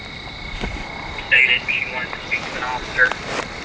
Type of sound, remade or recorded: recorded